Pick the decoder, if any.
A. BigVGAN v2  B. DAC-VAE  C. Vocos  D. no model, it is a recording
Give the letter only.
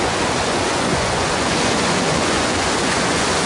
C